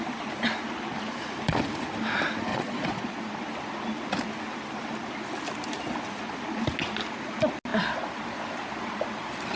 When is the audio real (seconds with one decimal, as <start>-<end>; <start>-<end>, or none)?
0.0-2.5; 3.2-9.6